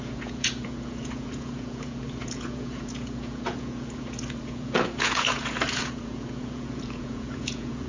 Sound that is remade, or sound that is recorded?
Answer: remade